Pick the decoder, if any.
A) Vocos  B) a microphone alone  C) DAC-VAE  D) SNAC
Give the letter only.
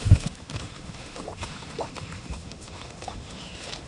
C